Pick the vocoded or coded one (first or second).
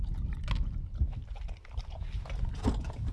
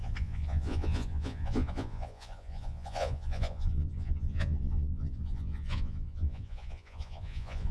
second